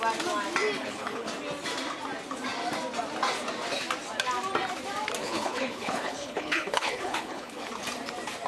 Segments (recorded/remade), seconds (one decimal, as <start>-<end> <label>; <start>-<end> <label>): 0.0-0.8 recorded; 0.8-1.3 remade; 1.3-5.2 recorded; 5.2-7.7 remade; 7.7-8.5 recorded